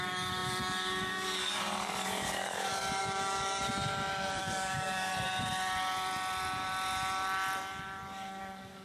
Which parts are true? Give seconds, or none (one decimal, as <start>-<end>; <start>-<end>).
3.8-4.4; 5.1-8.4